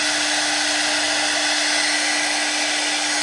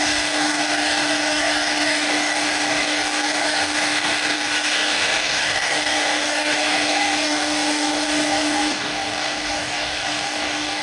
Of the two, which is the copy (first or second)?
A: second